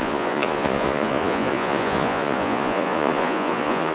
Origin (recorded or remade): remade